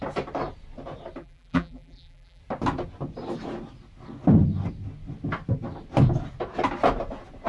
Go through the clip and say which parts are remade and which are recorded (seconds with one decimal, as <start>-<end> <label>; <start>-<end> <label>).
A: 0.0-1.2 recorded; 1.2-2.4 remade; 2.4-7.5 recorded